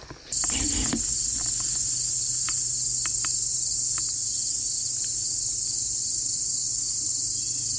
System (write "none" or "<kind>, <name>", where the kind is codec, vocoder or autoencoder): none